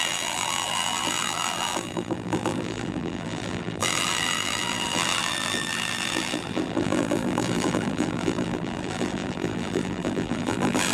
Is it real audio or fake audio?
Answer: fake